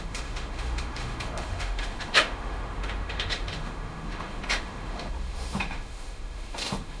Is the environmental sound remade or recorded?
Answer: remade